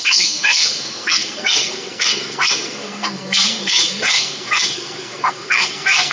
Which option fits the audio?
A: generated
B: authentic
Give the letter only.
A